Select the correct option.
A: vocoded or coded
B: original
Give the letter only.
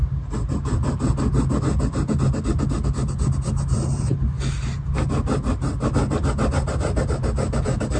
B